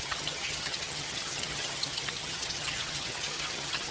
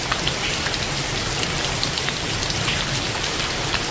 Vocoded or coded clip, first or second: first